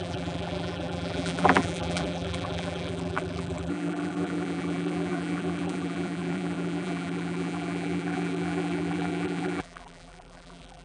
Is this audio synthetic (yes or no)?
yes